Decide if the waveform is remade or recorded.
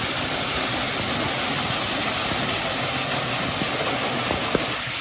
recorded